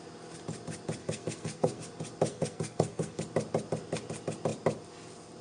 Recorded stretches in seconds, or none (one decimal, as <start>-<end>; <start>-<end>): 0.0-1.0; 1.8-2.3; 3.2-5.4